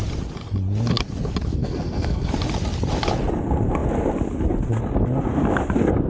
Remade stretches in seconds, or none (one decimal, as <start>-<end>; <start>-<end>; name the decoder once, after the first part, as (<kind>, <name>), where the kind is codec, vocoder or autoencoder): 1.6-2.3 (codec, SNAC)